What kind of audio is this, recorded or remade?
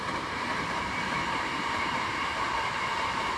remade